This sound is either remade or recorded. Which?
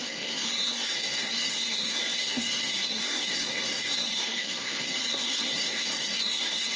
remade